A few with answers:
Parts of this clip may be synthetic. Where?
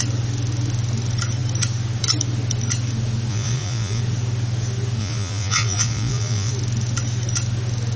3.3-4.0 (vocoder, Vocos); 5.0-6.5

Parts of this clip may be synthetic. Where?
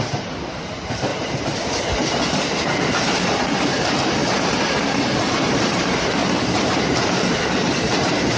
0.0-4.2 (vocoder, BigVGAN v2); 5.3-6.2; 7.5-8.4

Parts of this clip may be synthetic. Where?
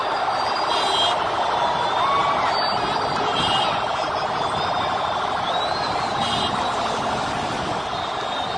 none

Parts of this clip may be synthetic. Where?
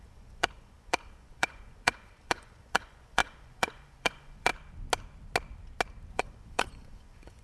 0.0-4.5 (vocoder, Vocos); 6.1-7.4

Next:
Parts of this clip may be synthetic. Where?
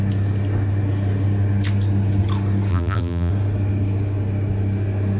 2.7-3.3 (vocoder, BigVGAN v2)